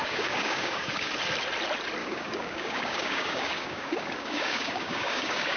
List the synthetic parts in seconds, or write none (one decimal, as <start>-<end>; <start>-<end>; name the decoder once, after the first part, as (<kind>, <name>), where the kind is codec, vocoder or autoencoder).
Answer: 0.0-1.1 (codec, DAC); 2.0-5.6